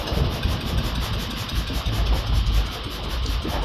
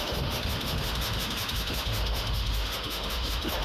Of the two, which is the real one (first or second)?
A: first